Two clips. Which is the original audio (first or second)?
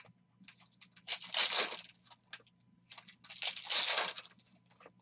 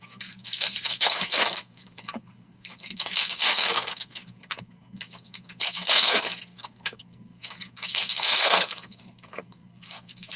first